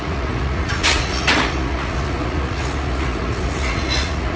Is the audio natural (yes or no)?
no